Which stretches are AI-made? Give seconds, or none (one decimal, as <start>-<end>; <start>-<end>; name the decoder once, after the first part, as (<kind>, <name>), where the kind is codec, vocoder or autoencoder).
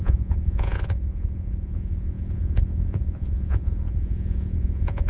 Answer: 0.0-5.1 (vocoder, Vocos)